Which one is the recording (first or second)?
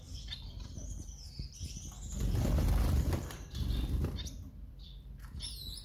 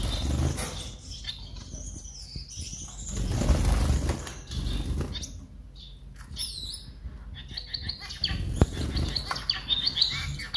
second